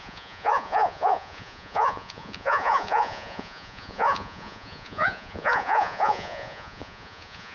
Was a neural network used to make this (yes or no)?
yes